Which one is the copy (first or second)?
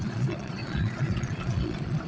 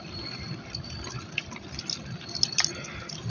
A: first